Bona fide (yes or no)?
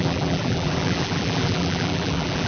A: no